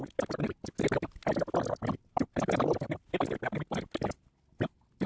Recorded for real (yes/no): yes